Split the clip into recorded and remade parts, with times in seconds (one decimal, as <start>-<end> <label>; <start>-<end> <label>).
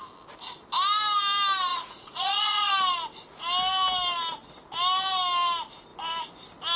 0.0-1.7 recorded; 1.7-2.7 remade; 2.7-6.8 recorded